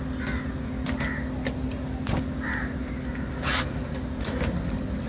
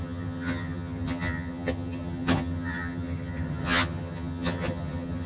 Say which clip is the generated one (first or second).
second